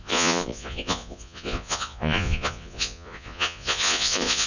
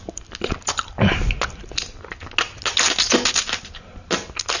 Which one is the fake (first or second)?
first